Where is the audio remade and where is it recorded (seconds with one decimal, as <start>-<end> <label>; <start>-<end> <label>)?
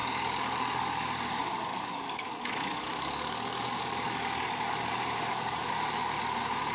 0.0-1.1 remade; 1.1-1.7 recorded; 1.7-5.7 remade; 5.7-6.7 recorded